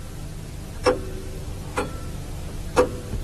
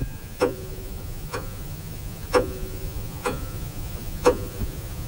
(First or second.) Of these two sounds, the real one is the first